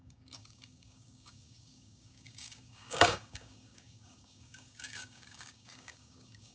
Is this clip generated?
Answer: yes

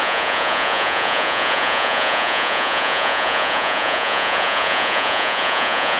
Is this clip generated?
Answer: yes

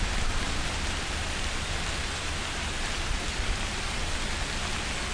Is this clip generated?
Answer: no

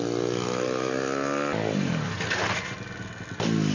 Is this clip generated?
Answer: no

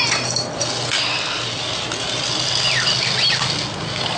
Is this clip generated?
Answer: no